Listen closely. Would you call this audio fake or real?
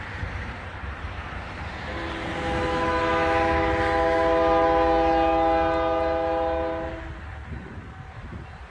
real